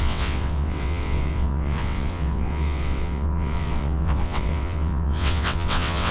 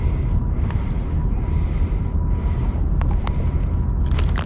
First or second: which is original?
second